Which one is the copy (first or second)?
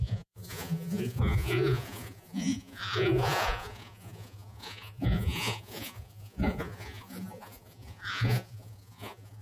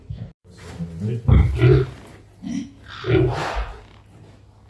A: first